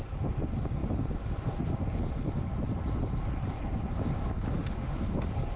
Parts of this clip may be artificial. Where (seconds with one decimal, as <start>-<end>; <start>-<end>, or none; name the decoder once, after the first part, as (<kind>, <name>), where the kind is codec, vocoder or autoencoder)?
4.5-5.0 (autoencoder, DAC-VAE)